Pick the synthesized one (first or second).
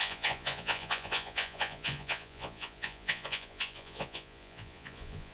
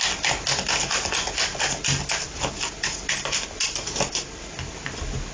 first